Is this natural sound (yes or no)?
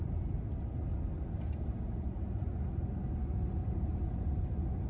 yes